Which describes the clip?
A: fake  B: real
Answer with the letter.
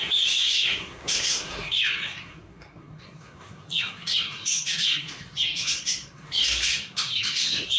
A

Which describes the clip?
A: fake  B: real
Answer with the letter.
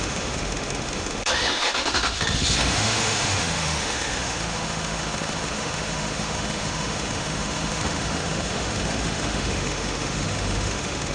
A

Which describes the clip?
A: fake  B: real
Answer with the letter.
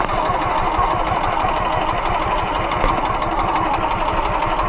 B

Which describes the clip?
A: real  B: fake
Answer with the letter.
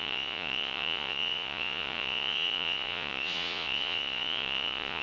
B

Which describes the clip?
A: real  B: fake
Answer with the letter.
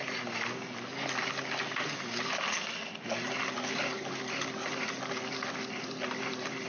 A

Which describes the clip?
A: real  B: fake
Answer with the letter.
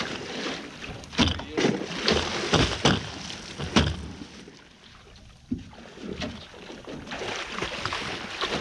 A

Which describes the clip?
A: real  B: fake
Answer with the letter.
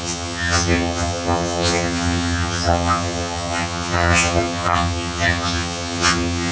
B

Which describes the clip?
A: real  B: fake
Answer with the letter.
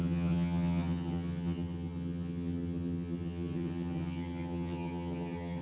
B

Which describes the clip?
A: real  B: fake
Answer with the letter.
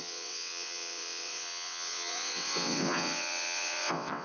B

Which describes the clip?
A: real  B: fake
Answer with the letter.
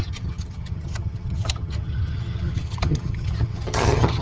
B